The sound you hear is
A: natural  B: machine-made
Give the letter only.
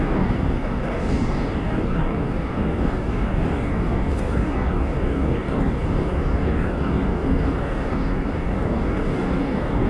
B